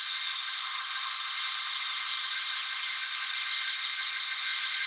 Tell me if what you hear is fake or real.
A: fake